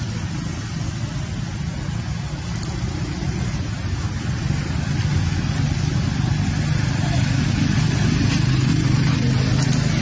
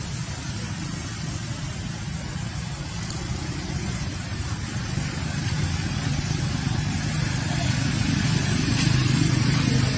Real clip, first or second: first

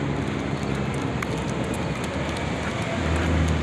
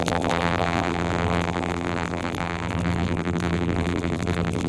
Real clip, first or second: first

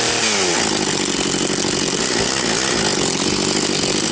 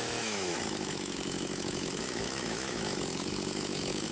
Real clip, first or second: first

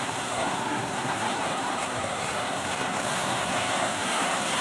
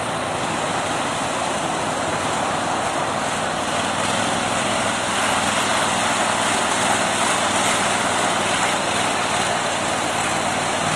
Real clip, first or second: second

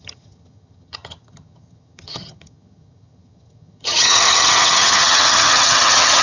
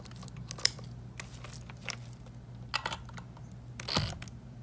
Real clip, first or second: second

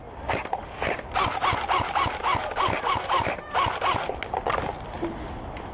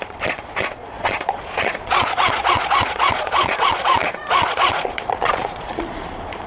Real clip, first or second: first